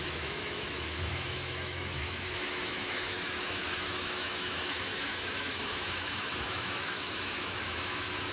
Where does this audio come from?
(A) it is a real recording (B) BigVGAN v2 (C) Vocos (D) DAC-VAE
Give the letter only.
D